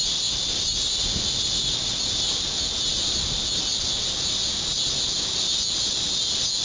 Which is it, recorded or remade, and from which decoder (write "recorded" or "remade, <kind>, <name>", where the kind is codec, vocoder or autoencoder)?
recorded